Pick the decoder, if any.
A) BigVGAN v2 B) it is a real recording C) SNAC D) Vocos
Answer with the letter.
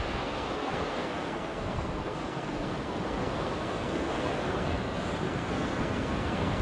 C